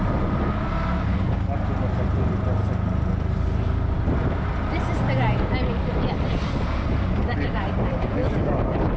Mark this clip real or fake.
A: real